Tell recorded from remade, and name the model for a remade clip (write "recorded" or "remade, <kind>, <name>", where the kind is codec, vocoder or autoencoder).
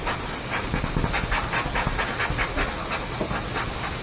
recorded